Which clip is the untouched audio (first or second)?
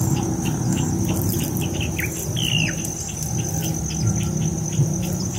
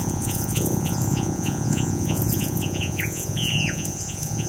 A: first